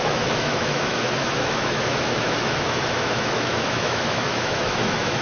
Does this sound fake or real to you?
fake